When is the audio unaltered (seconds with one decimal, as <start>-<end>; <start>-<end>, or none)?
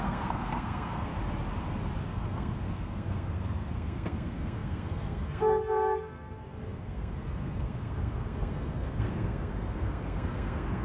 1.1-2.0